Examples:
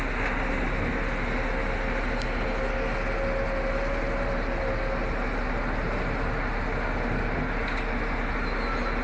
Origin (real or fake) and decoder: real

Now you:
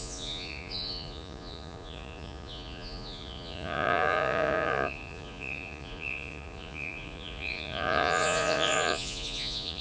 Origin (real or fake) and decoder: fake, vocoder, Vocos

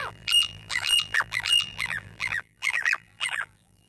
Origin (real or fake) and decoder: fake, vocoder, BigVGAN v2